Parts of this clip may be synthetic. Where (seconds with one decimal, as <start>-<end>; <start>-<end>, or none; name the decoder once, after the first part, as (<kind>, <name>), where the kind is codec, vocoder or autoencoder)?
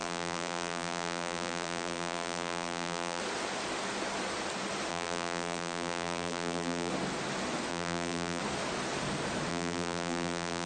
0.0-3.2 (vocoder, BigVGAN v2); 4.9-6.9; 7.7-8.4; 9.5-10.7